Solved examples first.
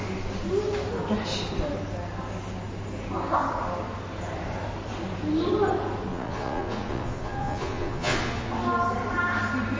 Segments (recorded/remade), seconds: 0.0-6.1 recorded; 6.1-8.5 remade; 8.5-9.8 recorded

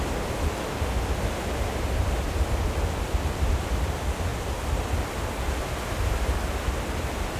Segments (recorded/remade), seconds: 0.0-7.4 recorded